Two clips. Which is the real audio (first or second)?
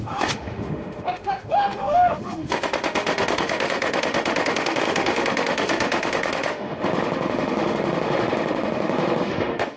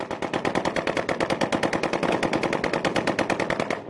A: second